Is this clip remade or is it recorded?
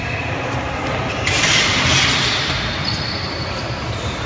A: recorded